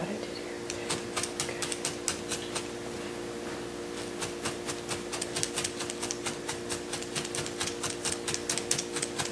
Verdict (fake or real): real